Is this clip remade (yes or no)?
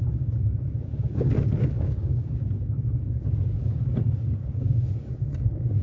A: yes